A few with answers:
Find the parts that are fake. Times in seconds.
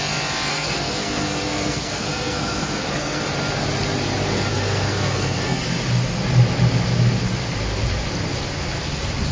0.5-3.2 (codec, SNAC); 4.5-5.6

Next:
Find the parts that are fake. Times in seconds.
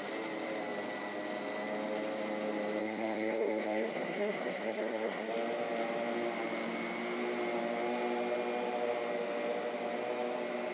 2.8-5.3 (codec, SNAC)